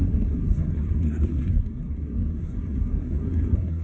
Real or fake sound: fake